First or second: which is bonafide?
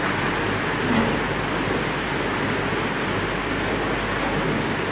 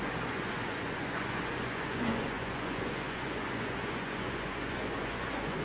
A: first